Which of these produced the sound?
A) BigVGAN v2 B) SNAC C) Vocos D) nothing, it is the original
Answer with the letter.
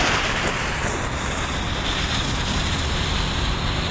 A